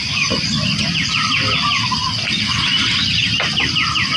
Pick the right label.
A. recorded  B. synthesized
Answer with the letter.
B